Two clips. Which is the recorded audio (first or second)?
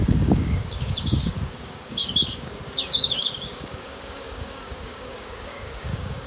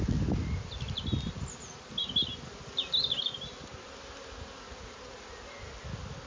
second